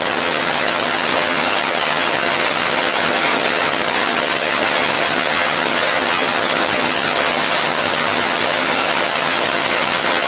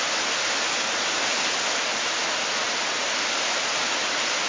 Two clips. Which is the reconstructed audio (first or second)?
first